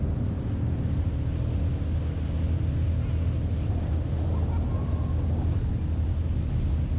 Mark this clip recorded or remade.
recorded